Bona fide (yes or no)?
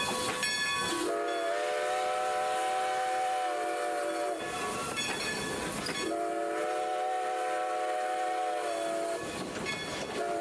yes